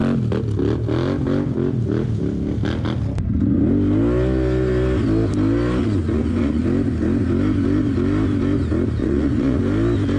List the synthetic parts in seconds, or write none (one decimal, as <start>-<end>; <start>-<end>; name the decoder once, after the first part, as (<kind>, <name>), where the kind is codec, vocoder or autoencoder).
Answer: 5.8-6.6 (vocoder, Vocos); 9.0-9.6